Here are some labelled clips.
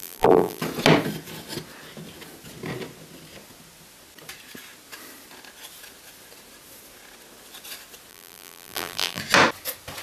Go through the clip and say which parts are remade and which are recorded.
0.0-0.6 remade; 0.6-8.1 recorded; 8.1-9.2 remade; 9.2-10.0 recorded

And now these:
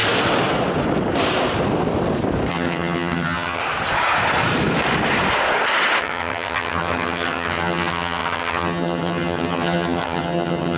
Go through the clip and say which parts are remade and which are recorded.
0.0-2.5 recorded; 2.5-3.6 remade; 3.6-6.0 recorded; 6.0-10.8 remade

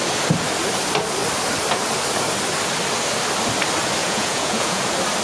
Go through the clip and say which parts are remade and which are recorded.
0.0-4.0 recorded; 4.0-4.8 remade; 4.8-5.2 recorded

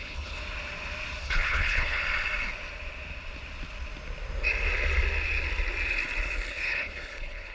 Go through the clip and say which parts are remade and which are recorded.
0.0-0.4 remade; 0.4-1.2 recorded; 1.2-2.0 remade; 2.0-6.5 recorded; 6.5-7.5 remade